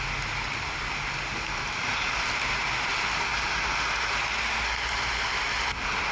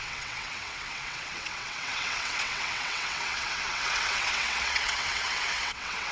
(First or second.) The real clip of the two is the first